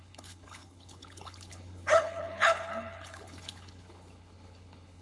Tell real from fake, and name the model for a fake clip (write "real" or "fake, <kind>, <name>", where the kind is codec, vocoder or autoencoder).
fake, codec, HILCodec